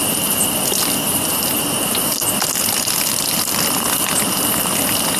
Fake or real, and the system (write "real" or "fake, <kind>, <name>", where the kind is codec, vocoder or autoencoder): real